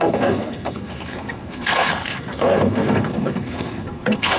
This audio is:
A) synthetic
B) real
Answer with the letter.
A